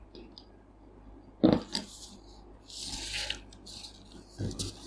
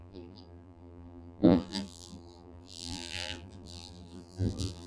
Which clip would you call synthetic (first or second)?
second